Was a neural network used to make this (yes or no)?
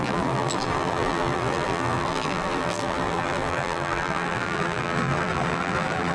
yes